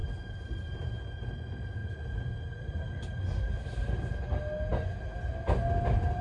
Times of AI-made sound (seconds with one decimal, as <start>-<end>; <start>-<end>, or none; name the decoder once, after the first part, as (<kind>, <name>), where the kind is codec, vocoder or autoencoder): 0.0-1.2 (vocoder, BigVGAN v2); 1.8-4.0